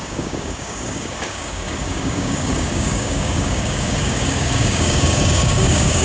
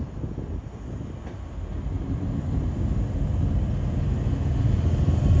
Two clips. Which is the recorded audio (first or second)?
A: second